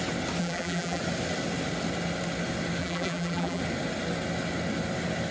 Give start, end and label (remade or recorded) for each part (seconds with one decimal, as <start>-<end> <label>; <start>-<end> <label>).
0.0-0.4 recorded; 0.4-1.0 remade; 1.0-2.8 recorded; 2.8-3.6 remade; 3.6-5.3 recorded